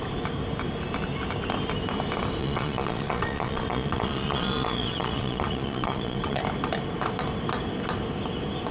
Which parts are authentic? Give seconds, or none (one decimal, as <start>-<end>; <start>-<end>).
0.0-2.4; 6.4-8.7